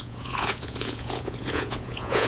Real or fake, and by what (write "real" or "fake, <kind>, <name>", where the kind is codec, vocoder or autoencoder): fake, vocoder, Vocos